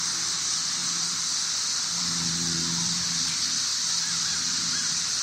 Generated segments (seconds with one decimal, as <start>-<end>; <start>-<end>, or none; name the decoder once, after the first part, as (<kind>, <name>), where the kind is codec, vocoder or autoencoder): 0.0-0.8 (vocoder, BigVGAN v2); 1.7-3.7; 4.2-5.2